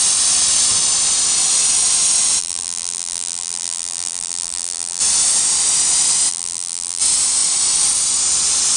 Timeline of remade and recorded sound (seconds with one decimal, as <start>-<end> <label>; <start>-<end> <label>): 0.0-2.4 recorded; 2.4-5.0 remade; 5.0-6.3 recorded; 6.3-7.0 remade; 7.0-8.8 recorded